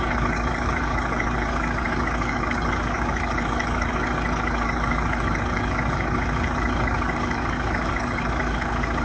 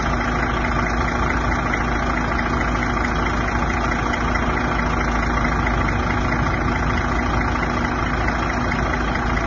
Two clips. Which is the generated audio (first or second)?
first